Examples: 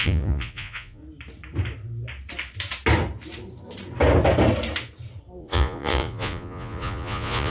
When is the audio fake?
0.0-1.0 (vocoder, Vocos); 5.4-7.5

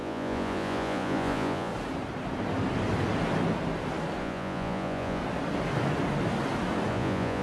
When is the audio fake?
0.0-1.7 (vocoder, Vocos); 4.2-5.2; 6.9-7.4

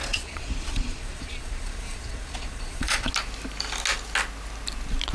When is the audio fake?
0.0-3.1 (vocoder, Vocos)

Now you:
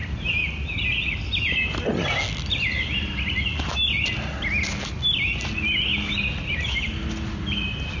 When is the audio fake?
none

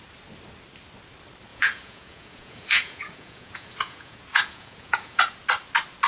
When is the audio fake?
1.5-5.2 (vocoder, Vocos)

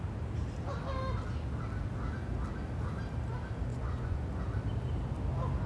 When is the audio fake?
3.7-4.4 (vocoder, Vocos)

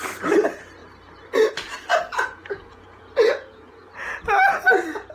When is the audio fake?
1.9-3.9 (vocoder, Vocos)

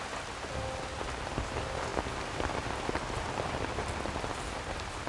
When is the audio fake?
none